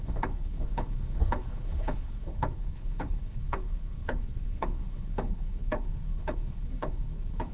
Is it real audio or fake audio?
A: fake